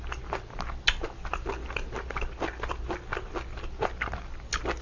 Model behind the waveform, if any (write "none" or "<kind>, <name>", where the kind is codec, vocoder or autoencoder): none